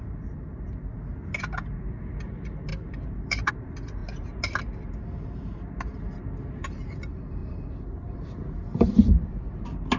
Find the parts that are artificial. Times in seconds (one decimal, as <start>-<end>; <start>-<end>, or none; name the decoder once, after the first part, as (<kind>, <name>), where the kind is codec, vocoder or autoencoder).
2.7-3.5 (vocoder, BigVGAN v2); 7.4-9.6

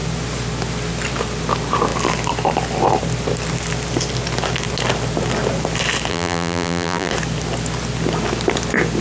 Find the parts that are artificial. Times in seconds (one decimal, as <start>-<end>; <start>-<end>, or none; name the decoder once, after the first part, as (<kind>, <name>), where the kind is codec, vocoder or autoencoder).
6.1-7.1 (vocoder, BigVGAN v2)

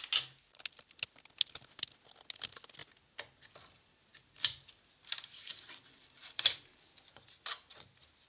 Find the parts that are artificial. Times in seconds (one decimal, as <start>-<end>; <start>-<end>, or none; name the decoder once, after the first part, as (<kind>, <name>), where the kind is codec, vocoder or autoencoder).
none